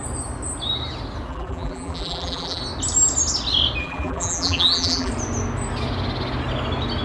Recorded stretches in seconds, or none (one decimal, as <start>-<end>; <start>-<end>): 0.0-1.3; 2.6-3.8; 5.1-7.0